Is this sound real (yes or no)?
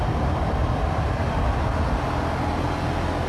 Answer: yes